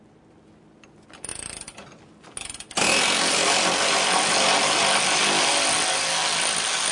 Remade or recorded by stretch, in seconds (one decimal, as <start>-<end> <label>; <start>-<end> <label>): 0.0-6.9 recorded